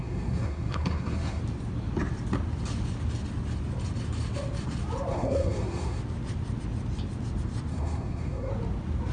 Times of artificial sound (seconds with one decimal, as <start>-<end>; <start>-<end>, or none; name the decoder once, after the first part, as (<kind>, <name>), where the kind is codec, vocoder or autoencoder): 0.0-1.4 (codec, SNAC); 5.1-6.0; 7.7-8.5